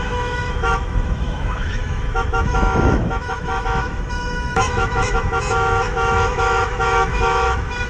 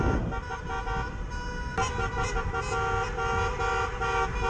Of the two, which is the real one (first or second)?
second